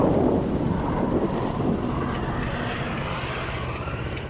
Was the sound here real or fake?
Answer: real